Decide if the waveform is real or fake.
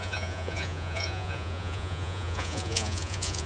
fake